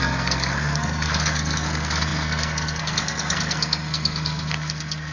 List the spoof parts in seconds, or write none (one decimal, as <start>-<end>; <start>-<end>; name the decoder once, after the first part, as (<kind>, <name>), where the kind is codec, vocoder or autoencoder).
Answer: 0.0-5.1 (codec, SNAC)